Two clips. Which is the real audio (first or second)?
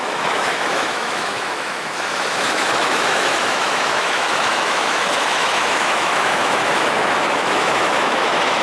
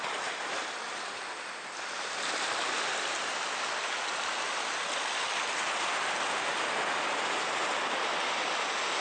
second